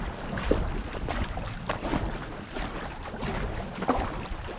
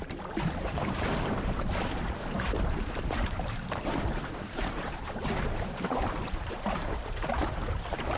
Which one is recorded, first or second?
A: first